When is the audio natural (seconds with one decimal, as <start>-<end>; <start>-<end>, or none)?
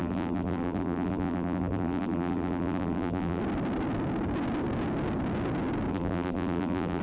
3.4-5.9